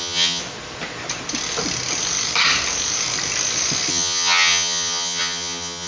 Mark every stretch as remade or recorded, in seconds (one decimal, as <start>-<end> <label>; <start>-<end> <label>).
0.0-0.4 remade; 0.4-3.9 recorded; 3.9-5.9 remade